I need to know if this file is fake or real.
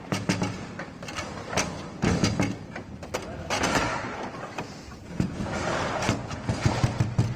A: real